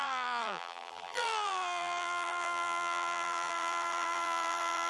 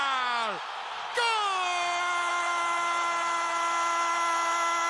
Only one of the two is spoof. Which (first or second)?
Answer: first